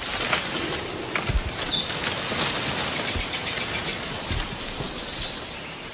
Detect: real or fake fake